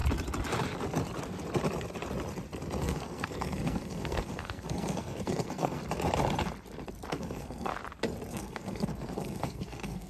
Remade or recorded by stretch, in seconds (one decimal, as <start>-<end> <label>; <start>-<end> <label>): 0.0-2.8 recorded; 2.8-5.8 remade; 5.8-7.1 recorded; 7.1-7.7 remade; 7.7-8.3 recorded; 8.3-10.1 remade